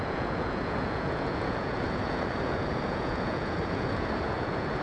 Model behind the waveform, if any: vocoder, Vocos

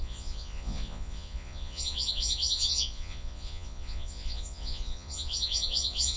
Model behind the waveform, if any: vocoder, Vocos